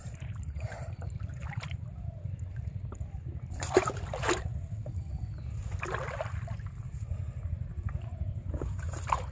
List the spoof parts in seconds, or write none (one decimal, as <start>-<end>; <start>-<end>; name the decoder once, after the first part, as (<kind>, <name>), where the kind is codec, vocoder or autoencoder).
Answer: 0.0-4.5 (vocoder, BigVGAN v2); 7.5-9.3